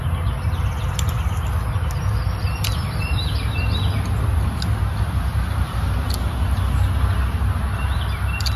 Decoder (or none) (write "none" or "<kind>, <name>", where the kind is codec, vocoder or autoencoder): none